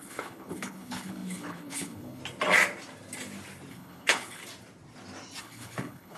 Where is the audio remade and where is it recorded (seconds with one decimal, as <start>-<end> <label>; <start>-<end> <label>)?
0.0-2.2 remade; 2.2-3.7 recorded; 3.7-4.4 remade; 4.4-5.4 recorded; 5.4-6.2 remade